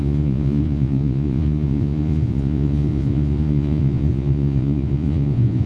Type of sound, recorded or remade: remade